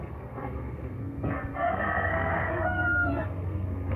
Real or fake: fake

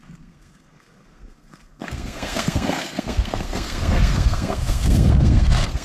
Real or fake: fake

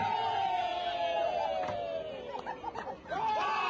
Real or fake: real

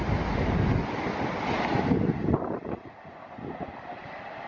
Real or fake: real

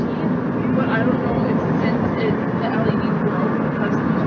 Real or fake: real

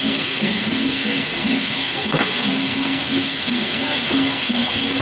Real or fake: fake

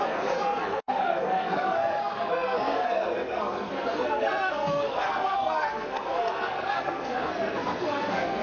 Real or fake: fake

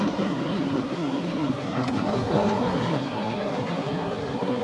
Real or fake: fake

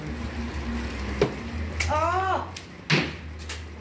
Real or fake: real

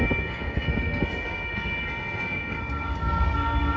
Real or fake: fake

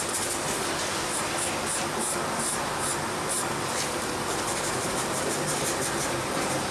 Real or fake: real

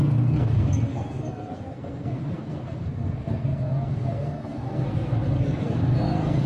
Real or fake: fake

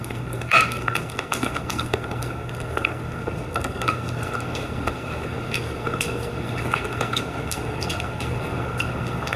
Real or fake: fake